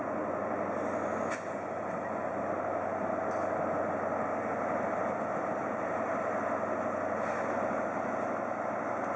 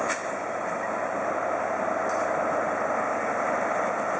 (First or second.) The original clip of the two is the first